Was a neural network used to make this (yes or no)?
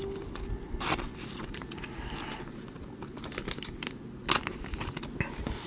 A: no